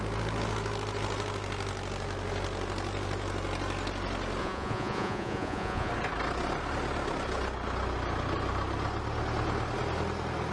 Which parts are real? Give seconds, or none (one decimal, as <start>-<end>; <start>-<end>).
0.0-4.4; 5.9-10.5